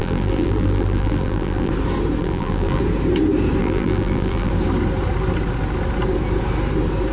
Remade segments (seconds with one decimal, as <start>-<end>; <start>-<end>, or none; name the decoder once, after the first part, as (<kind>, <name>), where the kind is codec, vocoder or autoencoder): 0.0-1.7 (vocoder, BigVGAN v2); 2.2-2.8; 3.6-4.5